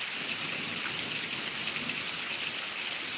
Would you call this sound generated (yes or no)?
no